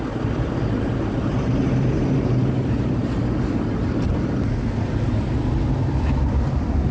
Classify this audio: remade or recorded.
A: recorded